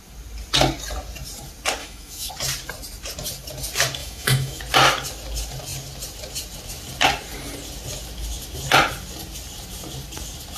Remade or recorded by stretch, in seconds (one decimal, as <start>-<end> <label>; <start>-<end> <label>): 0.0-1.8 recorded; 1.8-2.3 remade; 2.3-4.0 recorded; 4.0-4.6 remade; 4.6-10.6 recorded